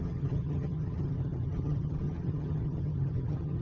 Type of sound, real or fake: fake